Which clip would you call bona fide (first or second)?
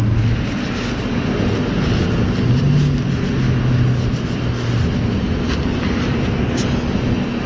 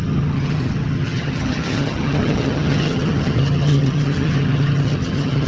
first